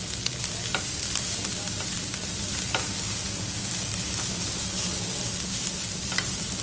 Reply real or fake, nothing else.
real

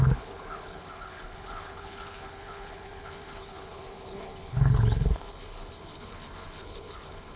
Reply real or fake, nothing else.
fake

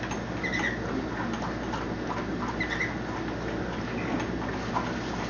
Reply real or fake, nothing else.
real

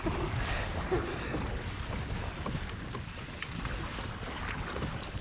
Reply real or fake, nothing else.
real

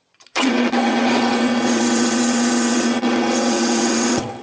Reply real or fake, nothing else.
fake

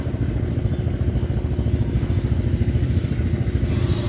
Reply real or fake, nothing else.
real